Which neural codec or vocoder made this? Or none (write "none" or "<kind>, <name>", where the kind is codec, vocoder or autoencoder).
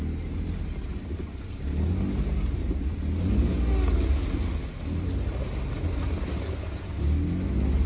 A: none